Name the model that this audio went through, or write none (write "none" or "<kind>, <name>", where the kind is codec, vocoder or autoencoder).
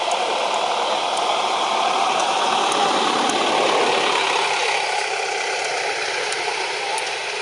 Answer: none